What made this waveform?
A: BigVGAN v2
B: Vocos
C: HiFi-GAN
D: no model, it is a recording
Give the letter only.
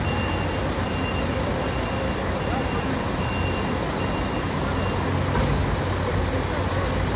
D